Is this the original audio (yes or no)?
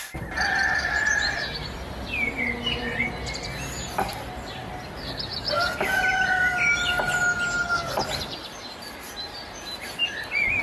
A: yes